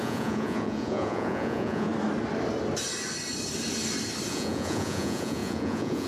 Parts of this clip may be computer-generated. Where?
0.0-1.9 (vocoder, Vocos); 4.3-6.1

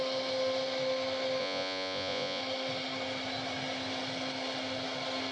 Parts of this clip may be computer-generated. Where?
1.4-2.4 (vocoder, Vocos)

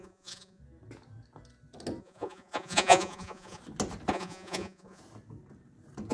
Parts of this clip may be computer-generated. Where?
0.0-0.6 (vocoder, Vocos); 2.0-3.6; 4.1-5.0

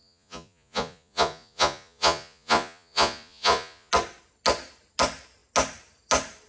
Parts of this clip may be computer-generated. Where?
0.0-3.9 (vocoder, Vocos)